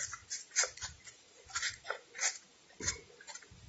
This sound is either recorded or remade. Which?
recorded